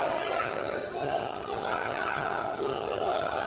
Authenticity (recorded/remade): remade